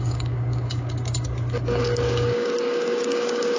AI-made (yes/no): yes